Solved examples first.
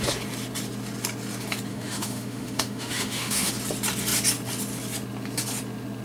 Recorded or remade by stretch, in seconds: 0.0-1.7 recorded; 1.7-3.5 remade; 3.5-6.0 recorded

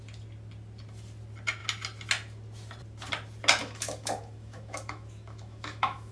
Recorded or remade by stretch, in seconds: 0.0-3.6 recorded; 3.6-6.1 remade

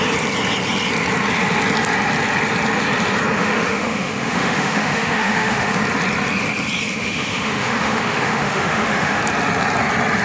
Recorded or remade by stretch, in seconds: 0.0-3.4 recorded; 3.4-5.8 remade; 5.8-6.9 recorded; 6.9-9.2 remade; 9.2-10.2 recorded

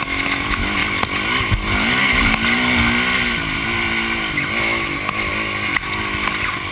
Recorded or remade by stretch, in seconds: 0.0-0.8 remade; 0.8-4.6 recorded; 4.6-5.3 remade; 5.3-6.7 recorded

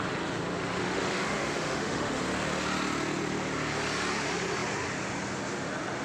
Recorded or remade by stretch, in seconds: 0.0-0.8 recorded; 0.8-2.2 remade; 2.2-6.0 recorded

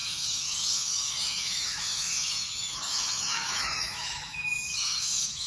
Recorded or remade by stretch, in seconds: 0.0-5.5 remade